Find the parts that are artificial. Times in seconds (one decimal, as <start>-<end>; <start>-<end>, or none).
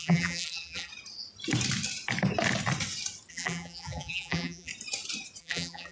0.0-0.9; 3.3-4.7; 5.4-5.9